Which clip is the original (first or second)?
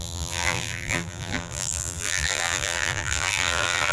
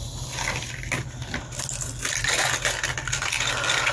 second